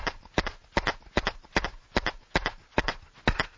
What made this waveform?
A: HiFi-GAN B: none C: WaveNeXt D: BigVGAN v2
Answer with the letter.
B